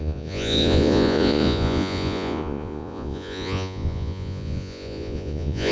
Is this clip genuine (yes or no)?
no